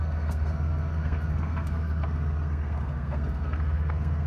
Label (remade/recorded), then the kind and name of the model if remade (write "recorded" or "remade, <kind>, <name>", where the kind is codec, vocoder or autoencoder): remade, codec, SNAC